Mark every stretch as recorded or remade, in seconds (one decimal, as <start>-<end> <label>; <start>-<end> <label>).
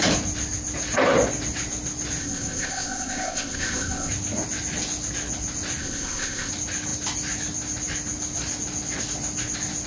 0.0-2.2 recorded; 2.2-4.1 remade; 4.1-5.8 recorded; 5.8-6.5 remade; 6.5-9.9 recorded